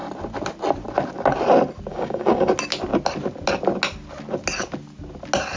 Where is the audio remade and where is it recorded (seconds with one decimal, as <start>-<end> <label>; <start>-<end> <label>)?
0.0-1.9 recorded; 1.9-2.5 remade; 2.5-5.6 recorded